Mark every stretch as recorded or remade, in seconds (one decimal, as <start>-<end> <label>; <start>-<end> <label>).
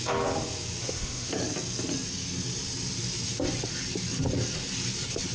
0.0-0.8 recorded; 0.8-1.3 remade; 1.3-5.3 recorded